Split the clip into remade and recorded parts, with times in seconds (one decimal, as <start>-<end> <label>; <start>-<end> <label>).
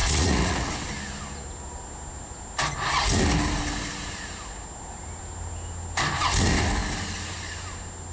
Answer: 0.0-0.7 remade; 0.7-8.1 recorded